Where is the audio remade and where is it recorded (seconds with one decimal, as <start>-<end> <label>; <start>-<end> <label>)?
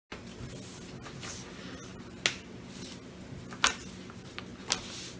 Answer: 0.0-5.2 recorded